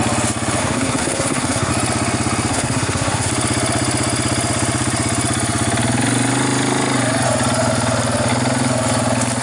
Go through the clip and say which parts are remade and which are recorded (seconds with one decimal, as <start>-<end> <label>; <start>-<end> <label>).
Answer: 0.0-0.6 recorded; 0.6-1.7 remade; 1.7-2.5 recorded; 2.5-3.3 remade; 3.3-9.4 recorded